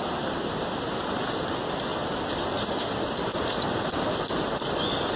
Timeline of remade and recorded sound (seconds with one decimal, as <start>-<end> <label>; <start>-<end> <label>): 0.0-5.2 recorded